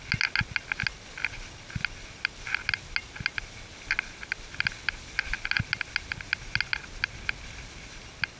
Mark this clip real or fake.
real